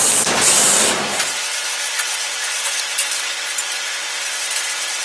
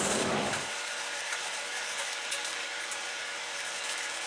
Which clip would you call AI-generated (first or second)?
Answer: second